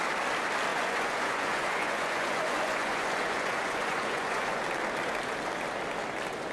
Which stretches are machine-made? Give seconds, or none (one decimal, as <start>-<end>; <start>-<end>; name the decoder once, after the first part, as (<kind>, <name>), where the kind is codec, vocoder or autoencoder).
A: 0.7-4.6 (vocoder, Vocos)